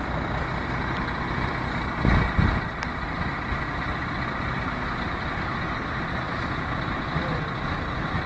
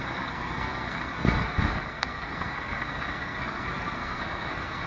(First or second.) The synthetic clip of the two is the second